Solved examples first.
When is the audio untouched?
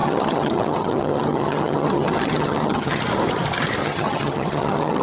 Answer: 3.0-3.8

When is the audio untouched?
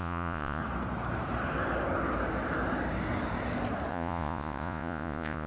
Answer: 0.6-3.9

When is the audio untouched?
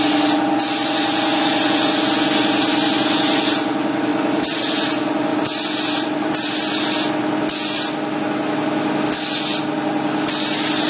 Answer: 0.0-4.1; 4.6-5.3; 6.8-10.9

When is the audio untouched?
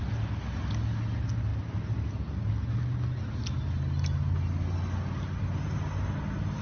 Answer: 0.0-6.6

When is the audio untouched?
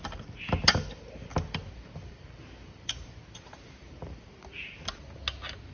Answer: 0.0-1.3; 4.6-5.7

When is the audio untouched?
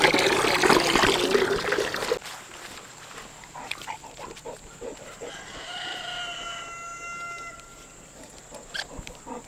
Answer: 0.0-9.5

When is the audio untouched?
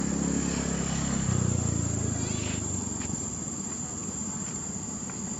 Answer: 0.0-5.4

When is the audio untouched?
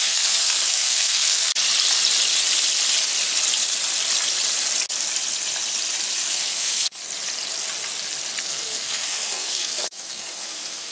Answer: 1.5-6.3; 7.0-8.4